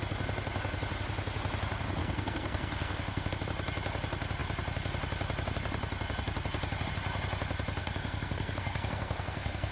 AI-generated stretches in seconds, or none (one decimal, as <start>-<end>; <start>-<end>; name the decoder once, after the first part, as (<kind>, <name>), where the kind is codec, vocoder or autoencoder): 2.0-3.3 (codec, SNAC); 7.8-9.7